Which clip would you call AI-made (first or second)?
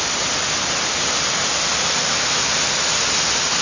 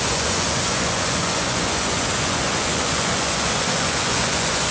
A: second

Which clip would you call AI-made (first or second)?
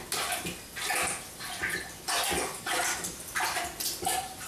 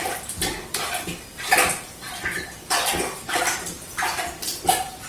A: second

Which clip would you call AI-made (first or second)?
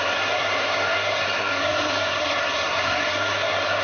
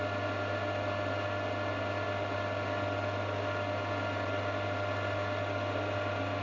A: first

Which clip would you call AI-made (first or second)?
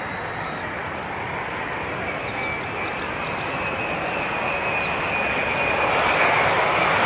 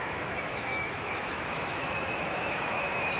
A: second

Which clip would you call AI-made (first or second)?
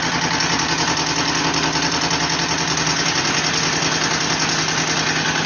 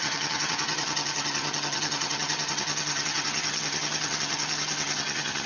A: second